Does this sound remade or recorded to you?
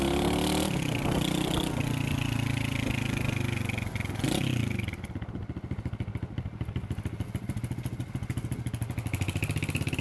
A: recorded